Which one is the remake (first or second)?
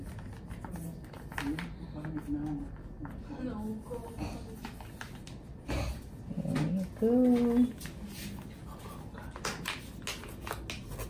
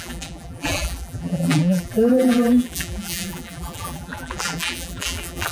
second